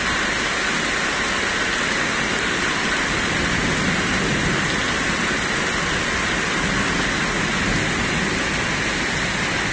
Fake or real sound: real